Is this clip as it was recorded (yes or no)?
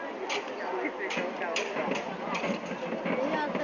yes